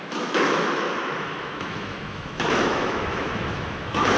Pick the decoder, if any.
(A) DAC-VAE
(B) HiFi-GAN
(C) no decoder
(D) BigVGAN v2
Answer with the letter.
A